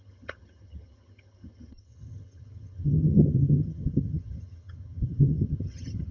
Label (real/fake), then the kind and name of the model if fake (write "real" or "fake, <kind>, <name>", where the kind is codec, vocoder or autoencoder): fake, vocoder, HiFi-GAN